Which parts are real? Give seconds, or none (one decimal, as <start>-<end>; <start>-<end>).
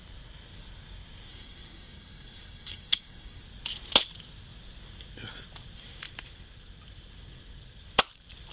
0.0-1.3; 3.4-8.5